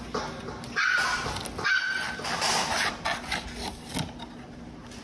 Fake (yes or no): no